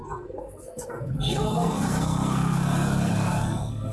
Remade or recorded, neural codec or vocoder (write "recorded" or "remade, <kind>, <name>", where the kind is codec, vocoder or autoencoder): remade, codec, SNAC